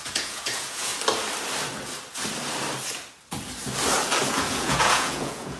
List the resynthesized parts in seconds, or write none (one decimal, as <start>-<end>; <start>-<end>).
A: 0.0-0.9; 4.3-5.6